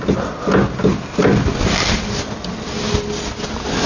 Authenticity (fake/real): real